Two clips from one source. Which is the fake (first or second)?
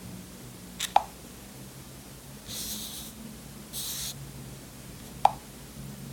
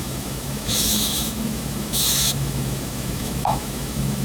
second